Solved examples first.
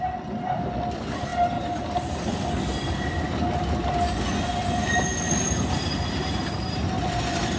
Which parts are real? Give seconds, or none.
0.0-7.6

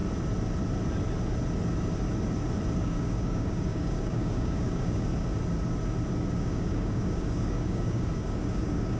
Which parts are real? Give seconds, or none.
0.0-2.8; 5.1-6.3

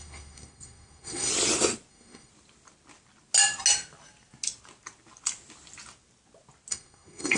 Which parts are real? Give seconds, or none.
1.3-1.9; 2.3-6.7

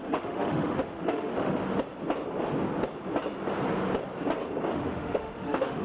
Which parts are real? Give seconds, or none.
1.6-4.7

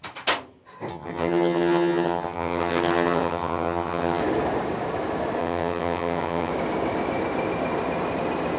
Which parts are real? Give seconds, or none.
0.0-0.9; 4.2-5.4; 6.5-8.6

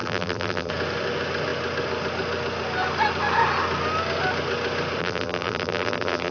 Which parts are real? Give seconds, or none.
0.7-5.0